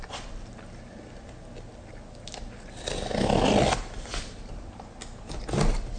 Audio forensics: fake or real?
real